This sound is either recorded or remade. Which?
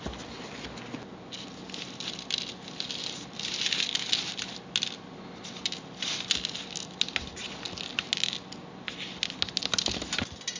recorded